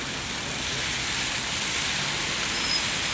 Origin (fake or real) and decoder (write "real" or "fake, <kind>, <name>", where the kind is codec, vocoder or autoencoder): real